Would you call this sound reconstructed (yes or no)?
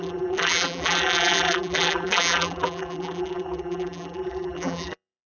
yes